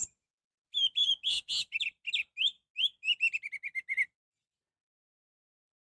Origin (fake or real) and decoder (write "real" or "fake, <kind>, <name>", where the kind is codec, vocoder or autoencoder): real